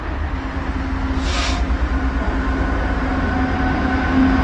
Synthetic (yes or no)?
no